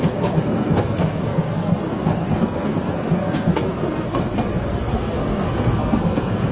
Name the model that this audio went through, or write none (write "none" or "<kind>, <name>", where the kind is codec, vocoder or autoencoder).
codec, SNAC